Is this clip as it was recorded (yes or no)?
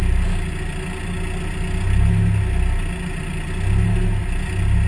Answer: yes